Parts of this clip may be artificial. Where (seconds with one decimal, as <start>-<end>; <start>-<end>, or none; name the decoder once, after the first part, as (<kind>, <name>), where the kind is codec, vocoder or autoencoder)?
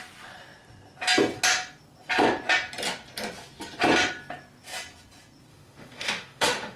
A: 5.5-6.8 (autoencoder, DAC-VAE)